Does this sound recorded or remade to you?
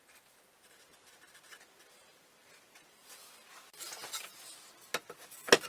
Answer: recorded